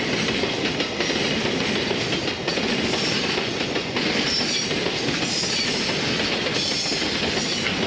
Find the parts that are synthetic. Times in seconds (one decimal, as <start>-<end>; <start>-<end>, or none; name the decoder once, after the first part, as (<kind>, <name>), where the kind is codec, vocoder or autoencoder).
3.4-4.1 (vocoder, Vocos)